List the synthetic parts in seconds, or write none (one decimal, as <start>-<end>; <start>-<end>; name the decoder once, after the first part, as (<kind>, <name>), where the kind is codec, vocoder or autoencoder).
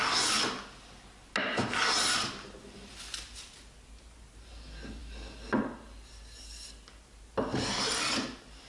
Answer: 5.0-5.7 (vocoder, BigVGAN v2)